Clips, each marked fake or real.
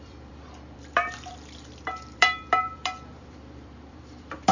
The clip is fake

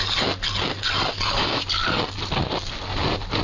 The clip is real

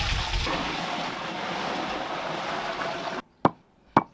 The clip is real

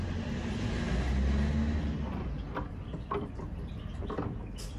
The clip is real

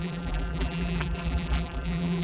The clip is fake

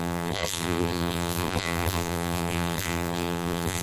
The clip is fake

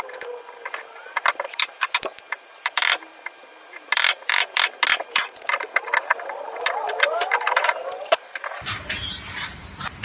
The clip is fake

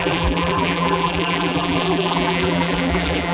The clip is fake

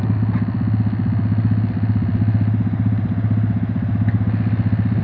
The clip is real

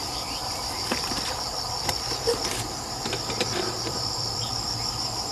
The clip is fake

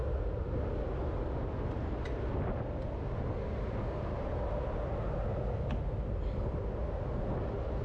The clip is real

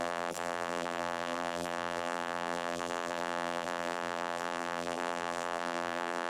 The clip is fake